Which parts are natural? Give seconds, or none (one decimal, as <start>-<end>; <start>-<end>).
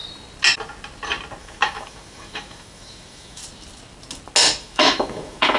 0.0-1.4; 3.4-4.6